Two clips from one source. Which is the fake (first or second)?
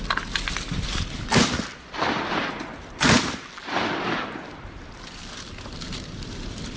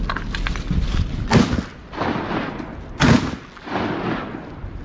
first